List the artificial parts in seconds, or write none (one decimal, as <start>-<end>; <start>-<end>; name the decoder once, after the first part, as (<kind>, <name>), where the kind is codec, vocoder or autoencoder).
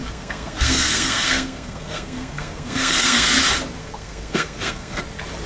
0.0-3.3 (codec, SNAC); 3.8-5.0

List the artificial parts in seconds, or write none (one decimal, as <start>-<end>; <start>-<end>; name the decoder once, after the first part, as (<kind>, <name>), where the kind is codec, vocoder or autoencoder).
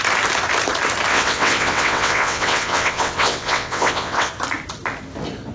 1.1-4.3 (vocoder, WaveNeXt)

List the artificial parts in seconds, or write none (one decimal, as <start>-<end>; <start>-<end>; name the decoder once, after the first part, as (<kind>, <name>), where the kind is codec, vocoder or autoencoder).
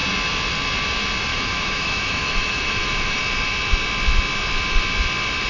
1.3-3.2 (autoencoder, DAC-VAE)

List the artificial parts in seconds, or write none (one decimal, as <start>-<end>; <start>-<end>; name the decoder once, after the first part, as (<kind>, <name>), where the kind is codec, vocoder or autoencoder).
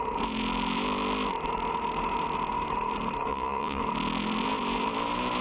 3.3-3.8 (vocoder, Vocos)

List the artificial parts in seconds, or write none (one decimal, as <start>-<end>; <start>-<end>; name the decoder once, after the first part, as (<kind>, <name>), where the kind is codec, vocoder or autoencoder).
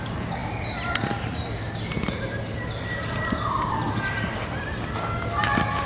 none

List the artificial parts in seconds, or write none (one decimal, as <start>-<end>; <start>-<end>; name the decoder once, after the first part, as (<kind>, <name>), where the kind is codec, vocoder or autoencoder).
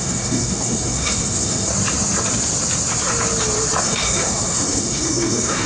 0.0-1.7 (codec, SNAC); 3.8-5.7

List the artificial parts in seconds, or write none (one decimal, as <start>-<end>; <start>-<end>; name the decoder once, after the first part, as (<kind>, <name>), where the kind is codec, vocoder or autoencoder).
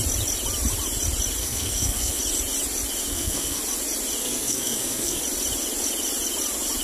1.4-2.2 (codec, SNAC); 3.1-3.6; 4.2-5.2